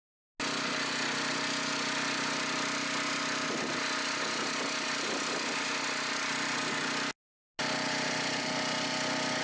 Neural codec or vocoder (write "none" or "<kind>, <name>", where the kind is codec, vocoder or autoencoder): none